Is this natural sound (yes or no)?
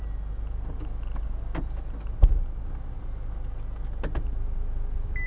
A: yes